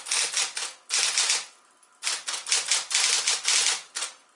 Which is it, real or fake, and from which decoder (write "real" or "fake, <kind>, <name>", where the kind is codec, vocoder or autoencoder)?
real